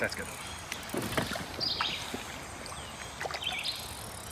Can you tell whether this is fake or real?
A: real